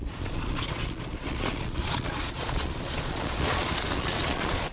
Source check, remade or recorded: remade